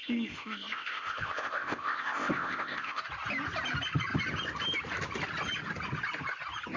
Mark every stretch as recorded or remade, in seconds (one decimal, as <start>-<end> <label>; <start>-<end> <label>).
0.0-3.0 remade; 3.0-6.8 recorded